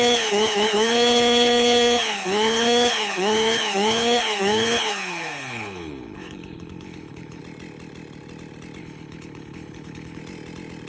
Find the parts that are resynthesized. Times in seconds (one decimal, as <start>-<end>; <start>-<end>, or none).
0.0-7.4; 8.8-10.2

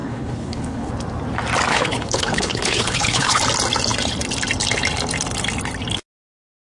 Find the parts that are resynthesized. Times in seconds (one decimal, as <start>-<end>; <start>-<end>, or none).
0.0-0.9; 1.7-3.4